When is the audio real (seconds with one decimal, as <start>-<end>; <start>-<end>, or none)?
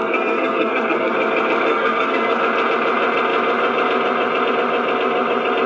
1.1-1.7; 2.4-5.7